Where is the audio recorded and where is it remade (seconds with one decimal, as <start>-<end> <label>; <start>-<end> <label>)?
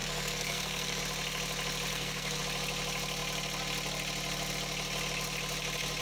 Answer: 0.0-1.0 remade; 1.0-1.9 recorded; 1.9-2.4 remade; 2.4-6.0 recorded